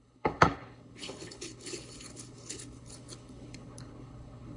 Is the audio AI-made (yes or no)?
yes